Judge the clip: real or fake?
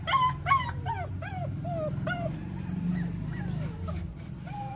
real